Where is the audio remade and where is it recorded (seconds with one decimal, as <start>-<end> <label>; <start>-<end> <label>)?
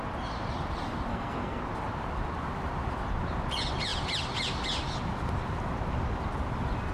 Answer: 0.0-1.1 recorded; 1.1-1.6 remade; 1.6-6.9 recorded